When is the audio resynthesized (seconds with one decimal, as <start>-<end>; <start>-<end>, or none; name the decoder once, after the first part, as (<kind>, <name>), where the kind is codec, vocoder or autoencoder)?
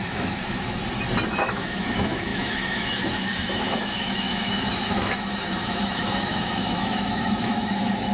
0.0-0.8 (autoencoder, DAC-VAE); 1.4-8.1